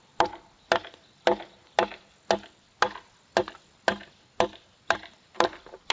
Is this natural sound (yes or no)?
yes